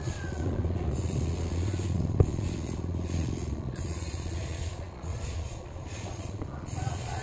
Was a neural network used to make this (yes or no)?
yes